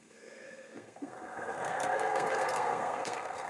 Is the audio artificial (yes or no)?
yes